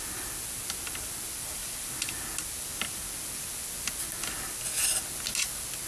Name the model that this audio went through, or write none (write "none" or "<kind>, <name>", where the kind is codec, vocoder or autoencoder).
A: none